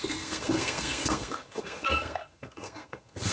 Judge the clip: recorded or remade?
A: remade